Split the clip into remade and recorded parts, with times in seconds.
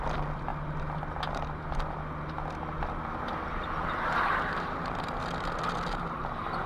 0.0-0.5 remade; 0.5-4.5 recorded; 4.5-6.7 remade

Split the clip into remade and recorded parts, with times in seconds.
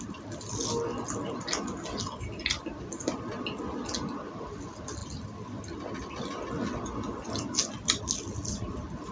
0.0-9.1 recorded